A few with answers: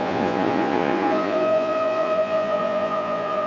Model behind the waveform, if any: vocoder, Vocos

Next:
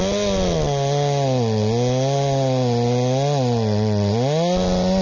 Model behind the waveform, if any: none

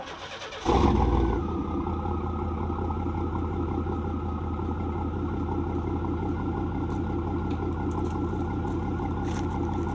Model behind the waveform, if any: none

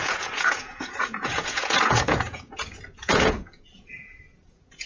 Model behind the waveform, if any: vocoder, Vocos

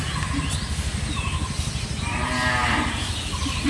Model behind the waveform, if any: none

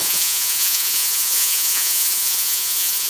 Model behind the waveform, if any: vocoder, Vocos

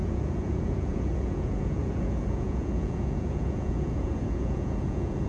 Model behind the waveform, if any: vocoder, Vocos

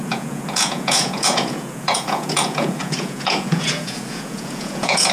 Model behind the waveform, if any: vocoder, Vocos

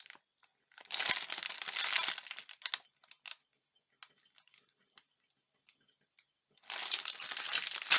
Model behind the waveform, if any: none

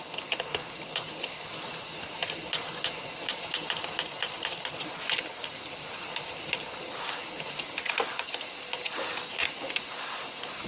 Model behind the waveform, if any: none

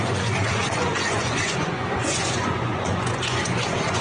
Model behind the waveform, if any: vocoder, Vocos